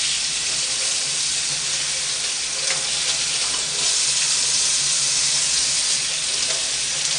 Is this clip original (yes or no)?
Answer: yes